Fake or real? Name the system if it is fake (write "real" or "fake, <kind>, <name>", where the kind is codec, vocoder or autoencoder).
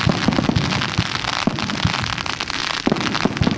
real